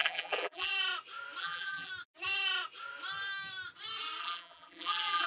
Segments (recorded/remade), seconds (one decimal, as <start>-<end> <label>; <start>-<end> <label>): 0.0-0.7 remade; 0.7-1.4 recorded; 1.4-1.9 remade; 1.9-4.2 recorded; 4.2-5.3 remade